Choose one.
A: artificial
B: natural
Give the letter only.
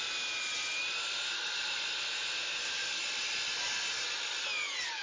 B